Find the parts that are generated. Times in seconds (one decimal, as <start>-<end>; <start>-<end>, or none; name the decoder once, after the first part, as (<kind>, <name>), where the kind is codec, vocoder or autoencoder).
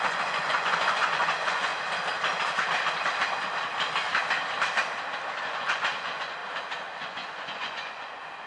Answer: 0.0-1.7 (vocoder, Vocos); 5.4-6.4; 6.9-8.5